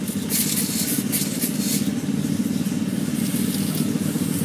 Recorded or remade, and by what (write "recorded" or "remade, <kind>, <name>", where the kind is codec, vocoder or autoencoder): recorded